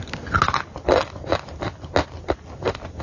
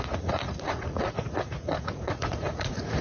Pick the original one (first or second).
first